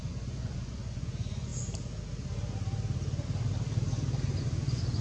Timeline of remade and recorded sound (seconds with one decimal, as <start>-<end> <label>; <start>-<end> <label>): 0.0-1.5 remade; 1.5-4.4 recorded; 4.4-5.0 remade